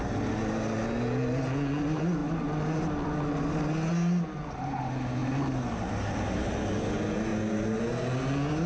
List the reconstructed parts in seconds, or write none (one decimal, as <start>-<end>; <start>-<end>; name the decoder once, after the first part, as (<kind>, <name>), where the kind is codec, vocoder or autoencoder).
none

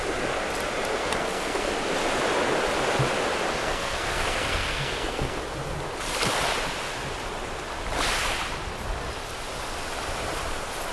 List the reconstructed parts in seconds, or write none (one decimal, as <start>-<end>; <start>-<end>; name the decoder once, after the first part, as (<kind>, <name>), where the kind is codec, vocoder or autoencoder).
1.0-1.7 (codec, SNAC); 3.6-5.4

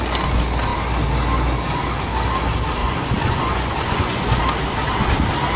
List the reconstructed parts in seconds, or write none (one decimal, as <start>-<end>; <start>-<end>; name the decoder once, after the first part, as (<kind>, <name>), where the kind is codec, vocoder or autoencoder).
2.8-4.4 (vocoder, Vocos)

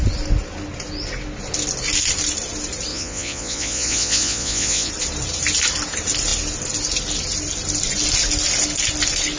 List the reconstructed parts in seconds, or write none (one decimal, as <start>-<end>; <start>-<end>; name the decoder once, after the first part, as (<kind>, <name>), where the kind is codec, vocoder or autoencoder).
2.9-4.9 (vocoder, Vocos)

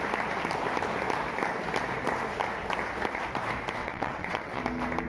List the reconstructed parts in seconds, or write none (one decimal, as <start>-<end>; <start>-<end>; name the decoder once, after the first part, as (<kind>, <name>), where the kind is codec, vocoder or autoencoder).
3.8-4.6 (vocoder, WaveNeXt)

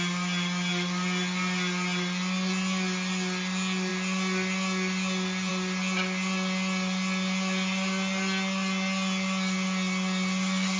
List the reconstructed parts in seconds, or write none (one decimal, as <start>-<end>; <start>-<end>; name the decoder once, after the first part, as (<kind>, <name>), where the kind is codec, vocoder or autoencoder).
none